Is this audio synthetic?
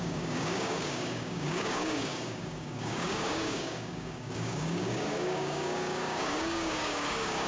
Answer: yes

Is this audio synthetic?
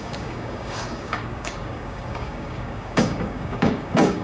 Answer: yes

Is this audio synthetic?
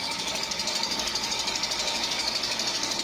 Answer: yes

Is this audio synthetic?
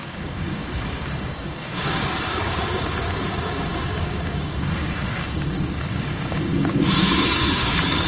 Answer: yes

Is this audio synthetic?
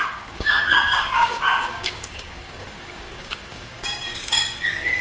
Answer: yes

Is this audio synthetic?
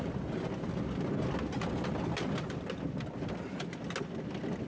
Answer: no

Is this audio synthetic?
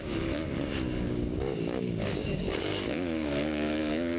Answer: yes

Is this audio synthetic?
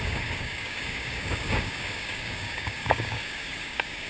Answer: yes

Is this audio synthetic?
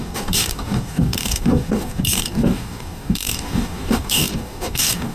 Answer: yes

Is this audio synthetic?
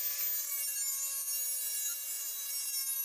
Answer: no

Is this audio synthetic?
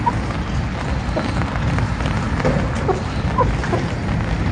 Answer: no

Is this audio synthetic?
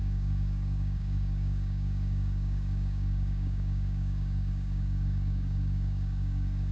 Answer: yes